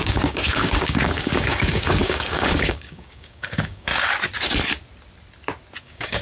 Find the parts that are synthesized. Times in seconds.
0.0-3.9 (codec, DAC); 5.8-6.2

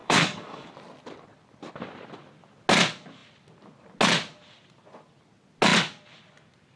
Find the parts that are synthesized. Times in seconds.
0.0-0.7 (codec, DAC)

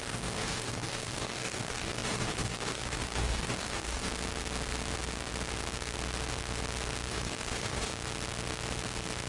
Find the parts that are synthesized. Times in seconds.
0.0-4.1 (codec, DAC); 7.1-7.9

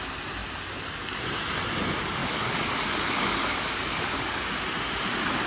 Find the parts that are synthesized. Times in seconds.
2.2-4.4 (codec, DAC)

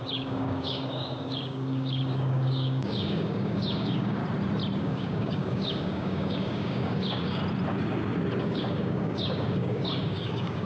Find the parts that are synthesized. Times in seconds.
0.0-4.2 (codec, DAC); 4.8-7.4; 8.4-10.7

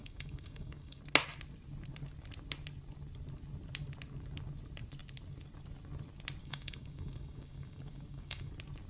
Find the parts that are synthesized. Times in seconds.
0.0-1.0 (codec, DAC); 6.4-8.5

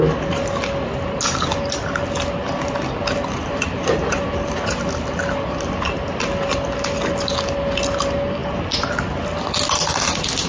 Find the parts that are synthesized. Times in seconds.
none